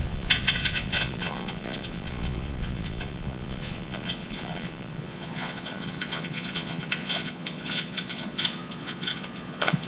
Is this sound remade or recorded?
remade